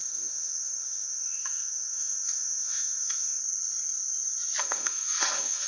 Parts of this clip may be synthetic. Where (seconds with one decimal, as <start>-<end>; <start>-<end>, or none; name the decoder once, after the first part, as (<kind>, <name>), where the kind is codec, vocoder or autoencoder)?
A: 0.0-3.4 (autoencoder, DAC-VAE); 4.6-5.7